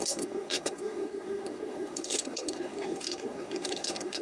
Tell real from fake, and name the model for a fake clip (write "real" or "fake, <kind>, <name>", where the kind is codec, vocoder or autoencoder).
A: fake, codec, SNAC